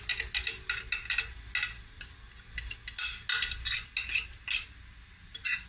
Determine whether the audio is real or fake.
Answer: real